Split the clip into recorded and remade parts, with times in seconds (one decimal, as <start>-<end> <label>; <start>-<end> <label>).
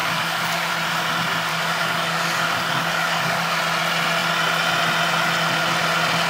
0.0-0.7 remade; 0.7-1.5 recorded; 1.5-3.6 remade; 3.6-6.3 recorded